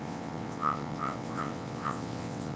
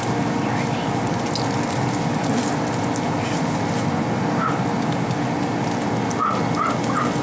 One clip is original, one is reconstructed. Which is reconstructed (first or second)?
first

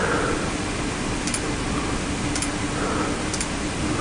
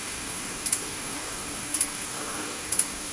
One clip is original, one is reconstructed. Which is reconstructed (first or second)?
second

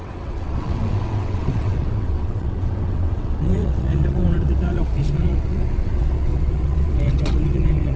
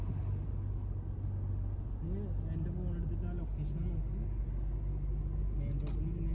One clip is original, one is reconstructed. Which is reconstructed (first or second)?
first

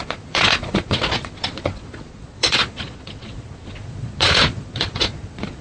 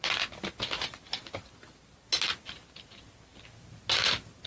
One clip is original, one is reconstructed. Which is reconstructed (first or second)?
first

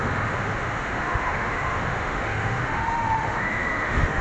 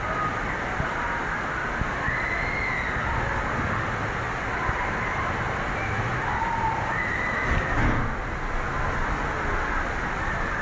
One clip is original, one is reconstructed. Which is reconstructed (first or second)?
first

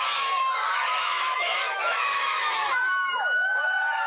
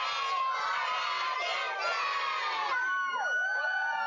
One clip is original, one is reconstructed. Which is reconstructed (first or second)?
first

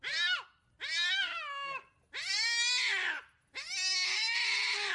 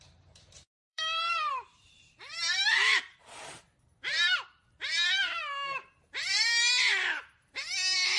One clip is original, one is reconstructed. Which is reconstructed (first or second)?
second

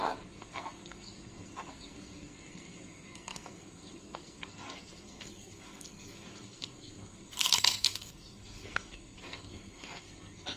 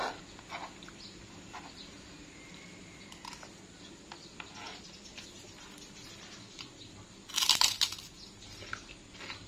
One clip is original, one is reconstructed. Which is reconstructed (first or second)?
first